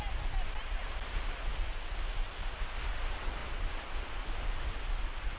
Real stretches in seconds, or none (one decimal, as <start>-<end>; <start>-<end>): 0.0-5.4

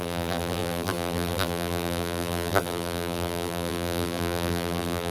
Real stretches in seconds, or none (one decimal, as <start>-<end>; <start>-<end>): none

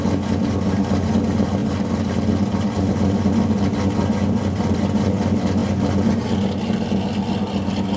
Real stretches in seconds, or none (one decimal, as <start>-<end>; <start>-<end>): 0.0-8.0

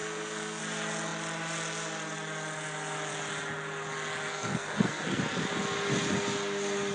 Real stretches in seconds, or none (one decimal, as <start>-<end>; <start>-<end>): 0.6-4.3; 5.2-6.9

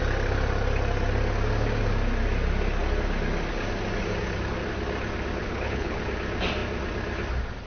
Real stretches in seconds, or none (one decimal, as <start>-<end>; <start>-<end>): 0.0-5.4; 6.0-7.7